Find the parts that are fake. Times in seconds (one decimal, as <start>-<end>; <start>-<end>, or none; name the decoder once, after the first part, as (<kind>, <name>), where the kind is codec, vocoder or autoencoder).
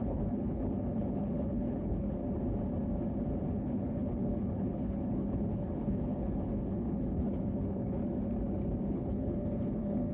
0.0-2.2 (codec, HILCodec); 3.5-8.0; 8.9-10.1